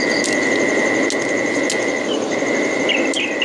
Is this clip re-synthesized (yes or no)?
no